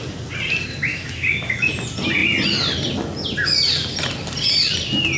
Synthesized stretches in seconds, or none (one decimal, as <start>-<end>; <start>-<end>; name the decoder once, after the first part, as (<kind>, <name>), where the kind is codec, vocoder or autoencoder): 0.9-1.7 (autoencoder, DAC-VAE)